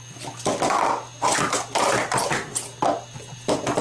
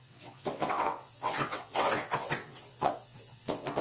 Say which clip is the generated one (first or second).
second